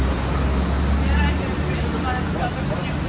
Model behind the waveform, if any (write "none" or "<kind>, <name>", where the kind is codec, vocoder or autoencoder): none